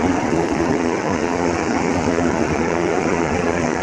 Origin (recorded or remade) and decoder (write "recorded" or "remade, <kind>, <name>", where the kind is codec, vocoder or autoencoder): remade, vocoder, Vocos